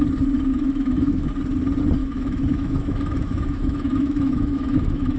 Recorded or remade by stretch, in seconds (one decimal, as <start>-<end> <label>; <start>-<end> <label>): 0.0-0.5 recorded; 0.5-1.3 remade; 1.3-2.0 recorded; 2.0-5.2 remade